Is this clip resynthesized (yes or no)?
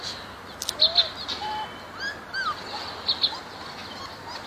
no